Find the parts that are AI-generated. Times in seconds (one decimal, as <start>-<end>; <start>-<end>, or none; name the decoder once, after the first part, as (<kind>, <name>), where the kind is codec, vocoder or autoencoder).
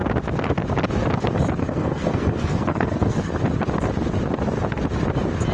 1.6-3.3 (codec, SNAC)